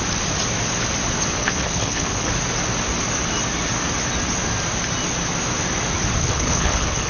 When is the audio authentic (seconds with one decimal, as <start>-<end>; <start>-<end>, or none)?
0.0-1.4; 2.3-6.2